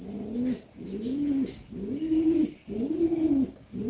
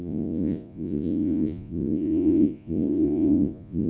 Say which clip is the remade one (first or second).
second